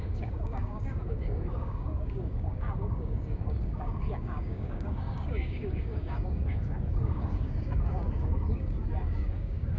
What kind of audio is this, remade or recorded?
remade